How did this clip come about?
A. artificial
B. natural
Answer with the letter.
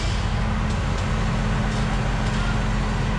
B